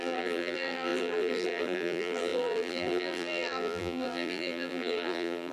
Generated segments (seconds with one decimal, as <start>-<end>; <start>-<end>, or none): 0.0-5.5